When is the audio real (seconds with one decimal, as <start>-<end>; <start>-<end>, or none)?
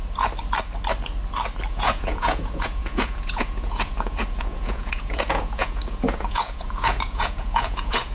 0.0-1.7